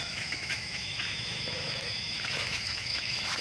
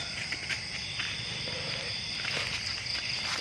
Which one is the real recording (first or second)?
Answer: second